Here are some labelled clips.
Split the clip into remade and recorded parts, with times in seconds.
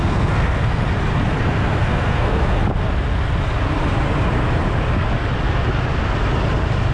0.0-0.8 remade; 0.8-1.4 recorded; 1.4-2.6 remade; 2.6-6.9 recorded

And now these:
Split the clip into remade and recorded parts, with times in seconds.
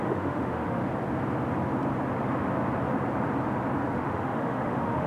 0.0-0.8 remade; 0.8-3.9 recorded; 3.9-5.1 remade